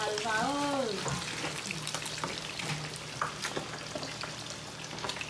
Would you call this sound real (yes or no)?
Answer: yes